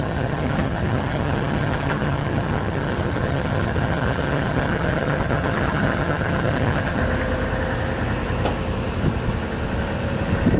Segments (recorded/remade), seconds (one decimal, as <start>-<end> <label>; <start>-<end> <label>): 0.0-7.0 remade; 7.0-10.6 recorded